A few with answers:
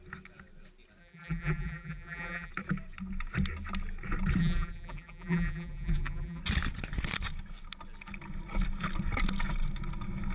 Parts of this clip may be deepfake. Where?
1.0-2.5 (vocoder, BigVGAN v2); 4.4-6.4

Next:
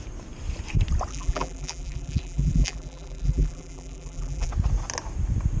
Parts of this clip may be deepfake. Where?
1.1-4.5 (vocoder, BigVGAN v2)